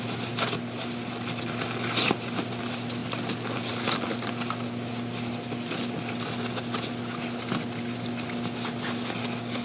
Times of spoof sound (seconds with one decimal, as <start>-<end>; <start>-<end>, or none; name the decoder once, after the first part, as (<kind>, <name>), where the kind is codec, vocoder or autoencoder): none